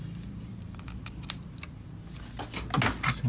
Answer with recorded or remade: recorded